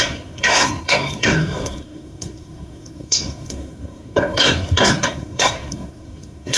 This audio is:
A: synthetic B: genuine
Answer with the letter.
A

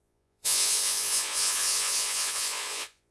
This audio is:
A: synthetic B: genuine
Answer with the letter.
A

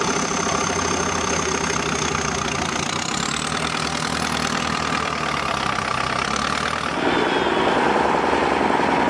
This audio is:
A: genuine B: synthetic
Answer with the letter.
A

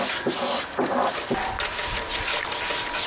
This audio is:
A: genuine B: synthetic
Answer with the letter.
A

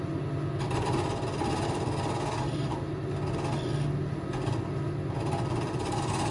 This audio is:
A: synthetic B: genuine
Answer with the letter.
B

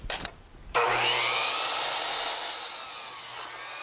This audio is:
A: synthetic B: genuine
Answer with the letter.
B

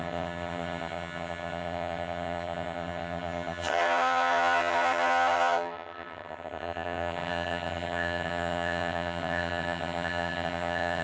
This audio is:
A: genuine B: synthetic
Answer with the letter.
B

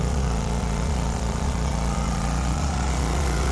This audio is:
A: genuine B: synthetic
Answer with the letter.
B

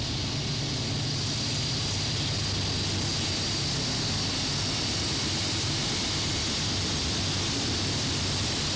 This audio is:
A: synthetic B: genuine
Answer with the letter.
B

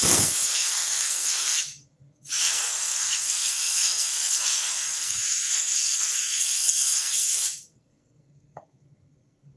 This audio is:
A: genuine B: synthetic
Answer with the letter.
B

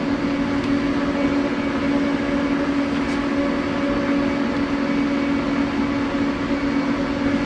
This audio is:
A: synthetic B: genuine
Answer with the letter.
B